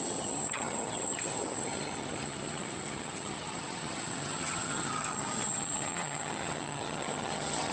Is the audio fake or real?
fake